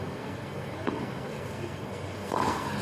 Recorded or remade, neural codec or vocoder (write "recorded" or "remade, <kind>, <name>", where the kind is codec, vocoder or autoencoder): remade, codec, SNAC